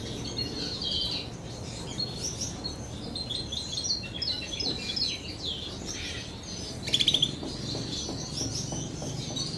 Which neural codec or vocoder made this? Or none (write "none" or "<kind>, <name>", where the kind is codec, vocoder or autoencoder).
none